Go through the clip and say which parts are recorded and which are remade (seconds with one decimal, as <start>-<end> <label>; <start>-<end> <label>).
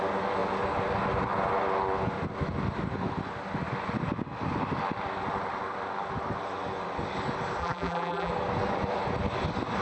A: 0.0-7.6 recorded; 7.6-8.3 remade; 8.3-9.8 recorded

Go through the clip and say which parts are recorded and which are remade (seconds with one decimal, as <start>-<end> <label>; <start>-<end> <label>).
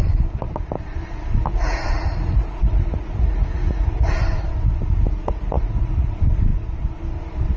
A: 0.0-1.5 recorded; 1.5-4.1 remade; 4.1-5.2 recorded; 5.2-6.1 remade; 6.1-7.6 recorded